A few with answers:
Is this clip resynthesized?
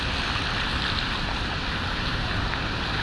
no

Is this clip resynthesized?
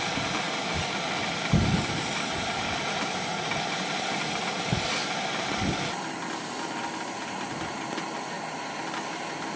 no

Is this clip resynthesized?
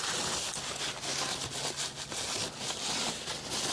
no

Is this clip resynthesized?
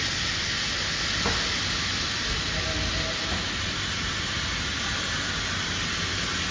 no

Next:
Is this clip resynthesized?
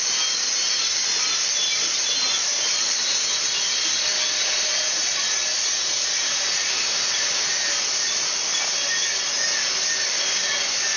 no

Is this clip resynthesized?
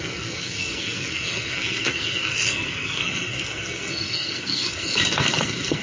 yes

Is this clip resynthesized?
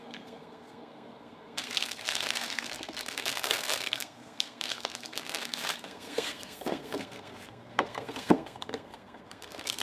yes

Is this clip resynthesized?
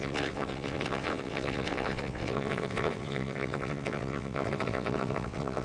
yes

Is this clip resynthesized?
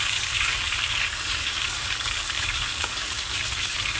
yes